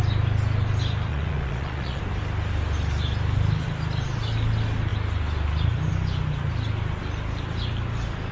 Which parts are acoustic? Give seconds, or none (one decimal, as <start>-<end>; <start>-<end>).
0.0-1.1; 2.0-8.3